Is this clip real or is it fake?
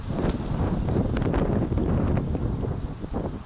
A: real